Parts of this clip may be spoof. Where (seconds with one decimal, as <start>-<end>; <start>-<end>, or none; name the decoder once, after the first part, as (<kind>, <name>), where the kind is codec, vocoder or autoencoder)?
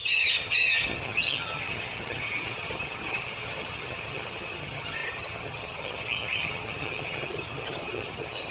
0.0-8.5 (vocoder, HiFi-GAN)